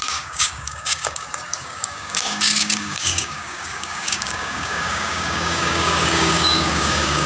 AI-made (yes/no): yes